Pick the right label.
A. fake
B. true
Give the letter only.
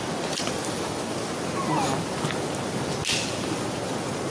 B